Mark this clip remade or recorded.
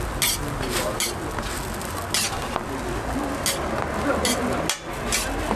recorded